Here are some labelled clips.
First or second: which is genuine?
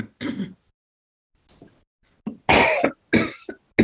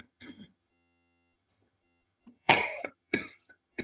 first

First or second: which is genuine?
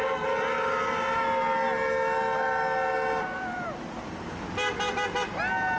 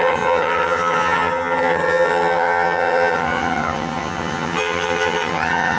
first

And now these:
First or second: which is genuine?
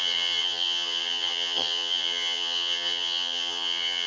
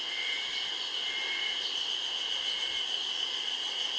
second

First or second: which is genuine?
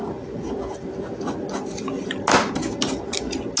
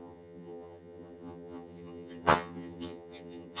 first